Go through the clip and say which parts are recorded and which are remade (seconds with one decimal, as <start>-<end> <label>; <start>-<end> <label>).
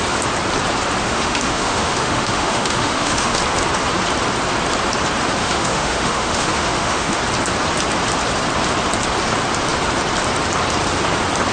0.0-1.0 recorded; 1.0-3.4 remade; 3.4-5.4 recorded; 5.4-7.2 remade; 7.2-11.5 recorded